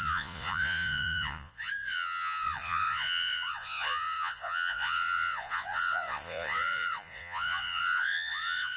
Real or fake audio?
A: fake